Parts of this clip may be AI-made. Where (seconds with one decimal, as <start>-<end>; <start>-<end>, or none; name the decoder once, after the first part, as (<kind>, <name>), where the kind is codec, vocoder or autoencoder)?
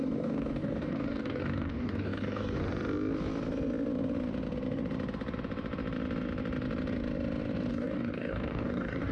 0.0-2.6 (codec, DAC); 7.7-9.1